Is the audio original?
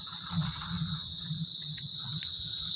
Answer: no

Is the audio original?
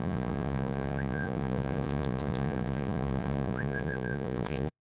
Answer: no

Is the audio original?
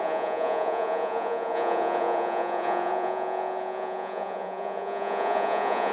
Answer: no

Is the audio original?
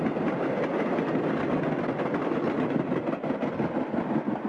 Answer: yes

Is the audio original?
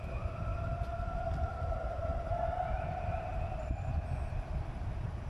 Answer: yes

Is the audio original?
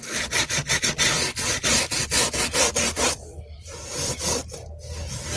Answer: yes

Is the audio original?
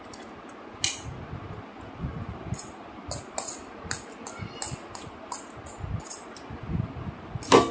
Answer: yes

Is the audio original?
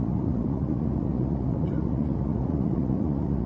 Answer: no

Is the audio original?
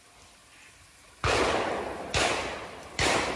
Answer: yes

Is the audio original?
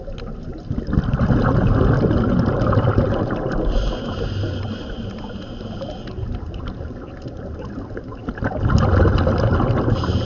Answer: yes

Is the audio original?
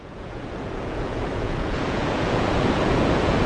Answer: no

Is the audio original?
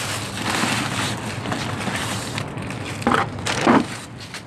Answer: yes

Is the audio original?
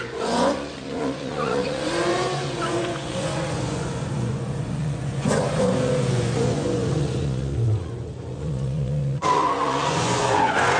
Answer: no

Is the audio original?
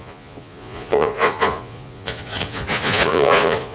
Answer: no